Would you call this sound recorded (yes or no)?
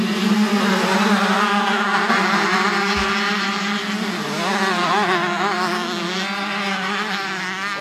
yes